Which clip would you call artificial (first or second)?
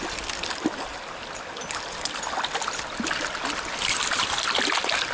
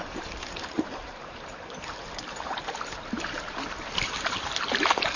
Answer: second